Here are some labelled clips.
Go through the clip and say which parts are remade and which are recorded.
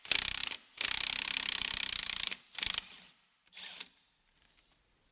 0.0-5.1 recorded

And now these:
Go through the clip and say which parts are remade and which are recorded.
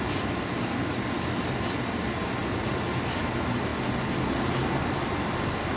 0.0-5.8 recorded